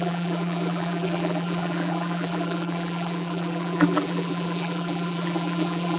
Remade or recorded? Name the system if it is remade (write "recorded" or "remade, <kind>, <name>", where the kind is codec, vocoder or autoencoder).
remade, vocoder, BigVGAN v2